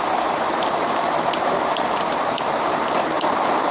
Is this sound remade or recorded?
remade